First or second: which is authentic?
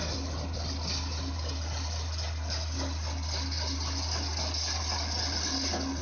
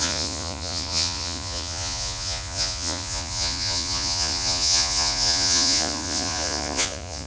first